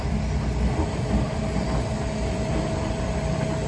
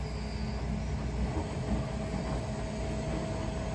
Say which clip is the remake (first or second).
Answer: first